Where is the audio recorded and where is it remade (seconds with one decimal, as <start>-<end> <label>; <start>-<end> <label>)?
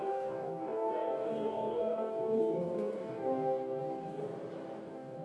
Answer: 0.0-4.2 remade; 4.2-4.8 recorded; 4.8-5.2 remade